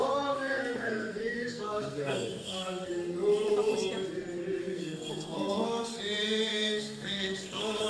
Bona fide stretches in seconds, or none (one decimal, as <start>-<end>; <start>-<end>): 2.9-4.6; 6.0-6.5